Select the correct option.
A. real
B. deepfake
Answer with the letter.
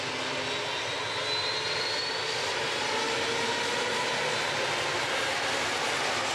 A